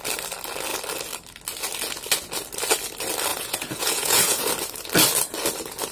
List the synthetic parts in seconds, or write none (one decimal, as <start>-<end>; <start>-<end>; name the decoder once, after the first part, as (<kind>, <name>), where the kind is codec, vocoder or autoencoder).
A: 3.3-4.5 (vocoder, Vocos)